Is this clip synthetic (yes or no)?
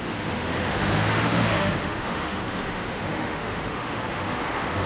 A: yes